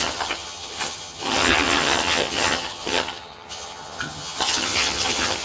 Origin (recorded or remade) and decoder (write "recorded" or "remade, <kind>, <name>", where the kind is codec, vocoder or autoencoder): remade, vocoder, HiFi-GAN